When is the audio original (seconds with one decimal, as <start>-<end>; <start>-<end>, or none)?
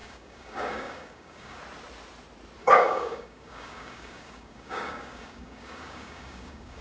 1.6-2.6